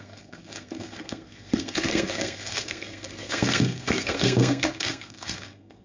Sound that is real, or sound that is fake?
fake